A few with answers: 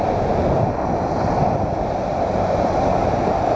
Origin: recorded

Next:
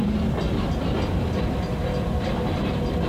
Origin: remade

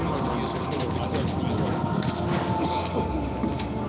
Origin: recorded